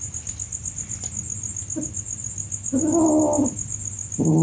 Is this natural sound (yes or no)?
yes